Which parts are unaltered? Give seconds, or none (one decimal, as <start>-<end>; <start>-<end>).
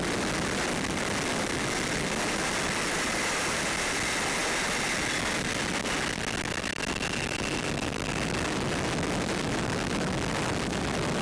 0.0-11.2